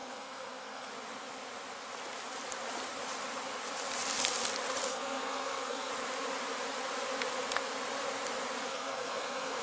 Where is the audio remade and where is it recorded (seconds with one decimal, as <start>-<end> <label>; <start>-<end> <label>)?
0.0-0.9 remade; 0.9-4.9 recorded; 4.9-5.9 remade; 5.9-8.7 recorded; 8.7-9.6 remade